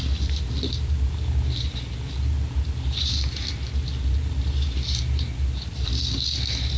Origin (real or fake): fake